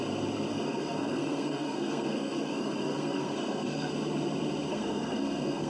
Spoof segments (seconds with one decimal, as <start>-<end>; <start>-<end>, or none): 0.5-3.9; 4.7-5.7